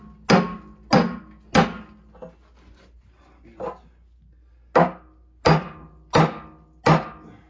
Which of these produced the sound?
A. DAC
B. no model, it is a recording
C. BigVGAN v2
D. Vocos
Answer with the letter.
B